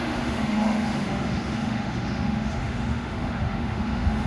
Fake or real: fake